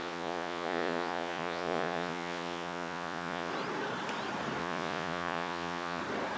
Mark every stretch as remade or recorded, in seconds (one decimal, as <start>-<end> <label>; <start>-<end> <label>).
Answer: 0.0-3.5 remade; 3.5-4.6 recorded; 4.6-6.0 remade; 6.0-6.4 recorded